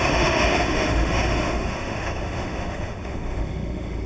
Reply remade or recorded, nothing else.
remade